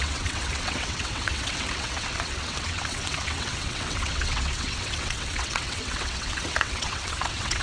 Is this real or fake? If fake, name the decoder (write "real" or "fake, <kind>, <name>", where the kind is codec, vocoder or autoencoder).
fake, vocoder, WaveNeXt